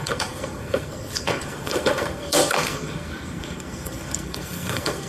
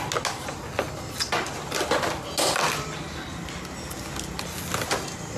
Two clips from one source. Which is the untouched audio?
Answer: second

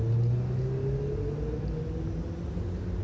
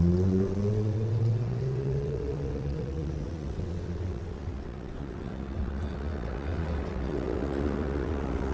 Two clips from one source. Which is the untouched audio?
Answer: first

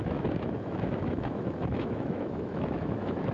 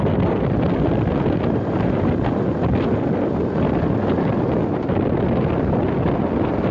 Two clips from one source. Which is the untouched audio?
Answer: second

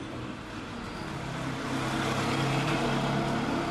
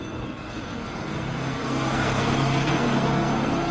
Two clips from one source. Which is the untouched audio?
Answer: first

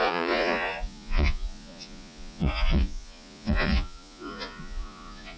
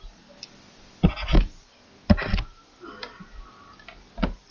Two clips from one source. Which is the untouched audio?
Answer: second